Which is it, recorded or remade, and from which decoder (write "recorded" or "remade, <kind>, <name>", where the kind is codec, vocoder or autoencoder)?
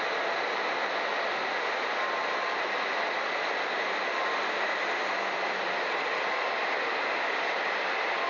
recorded